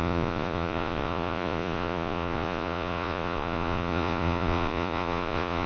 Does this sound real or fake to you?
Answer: fake